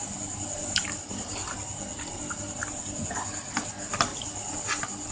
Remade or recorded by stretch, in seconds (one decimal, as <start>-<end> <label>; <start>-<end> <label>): 0.0-5.1 recorded